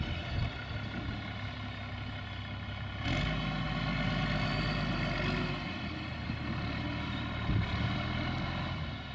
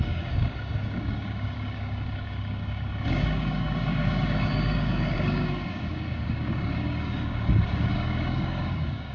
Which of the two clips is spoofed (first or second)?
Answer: second